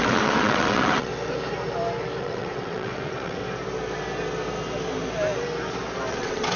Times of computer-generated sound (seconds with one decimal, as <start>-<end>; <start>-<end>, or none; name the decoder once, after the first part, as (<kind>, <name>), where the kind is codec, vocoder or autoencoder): 0.0-1.1 (vocoder, WaveNeXt); 2.2-3.4; 6.1-6.6